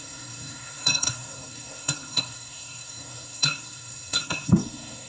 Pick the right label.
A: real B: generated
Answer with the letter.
B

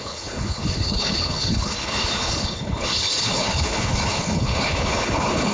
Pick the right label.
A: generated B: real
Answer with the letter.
A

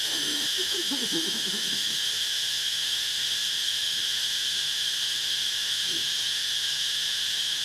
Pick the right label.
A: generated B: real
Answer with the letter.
A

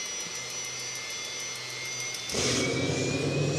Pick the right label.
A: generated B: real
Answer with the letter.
B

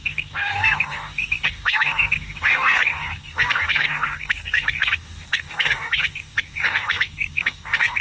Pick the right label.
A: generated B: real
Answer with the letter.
A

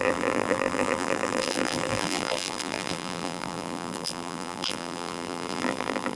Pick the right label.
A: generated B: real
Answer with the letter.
A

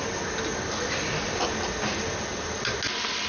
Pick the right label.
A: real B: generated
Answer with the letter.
A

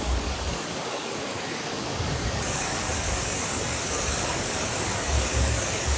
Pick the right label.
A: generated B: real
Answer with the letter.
A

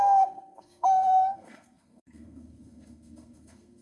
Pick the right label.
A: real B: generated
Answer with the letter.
B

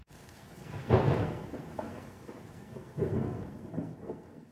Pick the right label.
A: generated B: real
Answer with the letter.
A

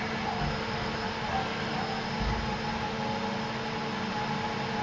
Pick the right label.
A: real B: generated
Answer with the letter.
A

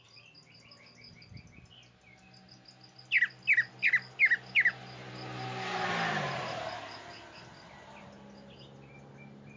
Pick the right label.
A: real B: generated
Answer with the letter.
A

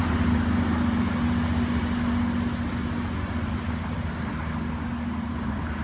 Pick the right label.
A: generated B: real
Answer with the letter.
B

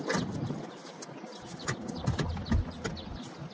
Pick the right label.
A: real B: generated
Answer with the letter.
A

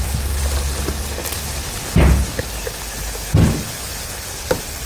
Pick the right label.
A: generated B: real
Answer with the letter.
B